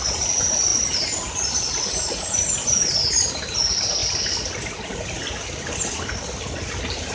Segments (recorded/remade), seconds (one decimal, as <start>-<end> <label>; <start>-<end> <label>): 0.0-7.1 recorded